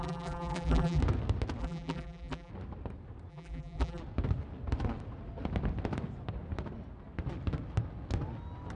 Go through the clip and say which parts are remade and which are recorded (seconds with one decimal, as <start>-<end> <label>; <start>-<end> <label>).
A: 0.0-1.0 remade; 1.0-1.6 recorded; 1.6-2.5 remade; 2.5-3.3 recorded; 3.3-4.0 remade; 4.0-8.8 recorded